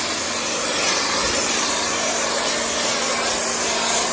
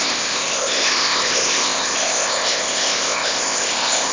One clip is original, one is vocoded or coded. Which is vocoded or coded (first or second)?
second